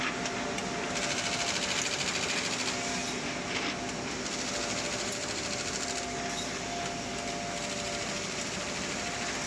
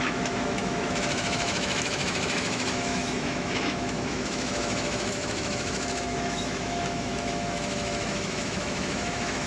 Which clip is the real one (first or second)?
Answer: first